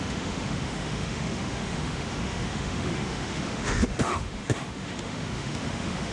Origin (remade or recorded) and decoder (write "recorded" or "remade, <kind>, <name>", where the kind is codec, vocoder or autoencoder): remade, autoencoder, DAC-VAE